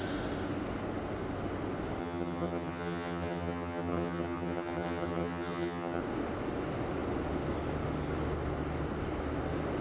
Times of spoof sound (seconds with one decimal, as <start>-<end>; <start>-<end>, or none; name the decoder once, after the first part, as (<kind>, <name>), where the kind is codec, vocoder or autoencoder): 2.0-6.0 (vocoder, HiFi-GAN)